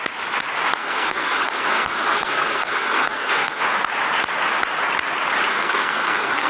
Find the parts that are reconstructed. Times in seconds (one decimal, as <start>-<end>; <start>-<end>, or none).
0.8-3.6; 5.5-6.5

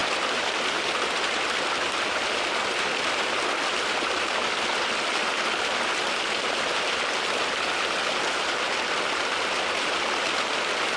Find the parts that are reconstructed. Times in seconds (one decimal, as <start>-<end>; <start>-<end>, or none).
none

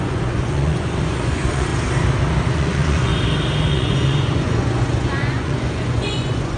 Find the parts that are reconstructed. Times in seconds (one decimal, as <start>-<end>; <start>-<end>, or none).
0.0-1.7; 2.5-3.1; 3.7-6.6